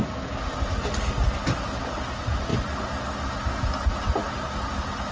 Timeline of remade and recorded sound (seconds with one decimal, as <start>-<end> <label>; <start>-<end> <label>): 0.0-5.1 recorded